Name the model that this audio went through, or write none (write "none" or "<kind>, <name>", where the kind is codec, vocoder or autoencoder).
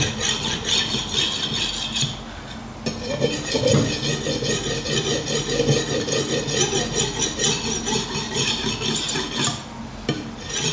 none